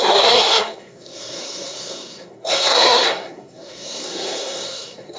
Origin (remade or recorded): remade